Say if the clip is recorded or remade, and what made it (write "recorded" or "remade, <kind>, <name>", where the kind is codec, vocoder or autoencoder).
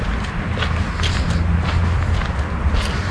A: recorded